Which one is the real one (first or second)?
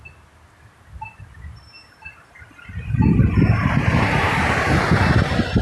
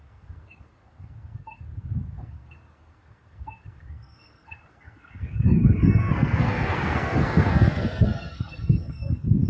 first